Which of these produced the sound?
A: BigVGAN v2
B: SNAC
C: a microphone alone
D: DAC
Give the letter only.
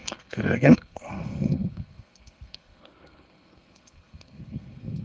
B